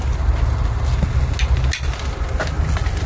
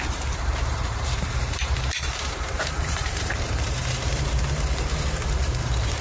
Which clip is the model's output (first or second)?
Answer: second